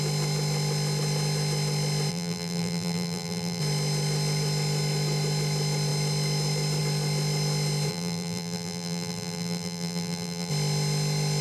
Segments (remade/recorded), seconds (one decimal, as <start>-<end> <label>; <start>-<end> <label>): 0.0-2.1 recorded; 2.1-3.6 remade; 3.6-7.9 recorded; 7.9-10.5 remade; 10.5-11.4 recorded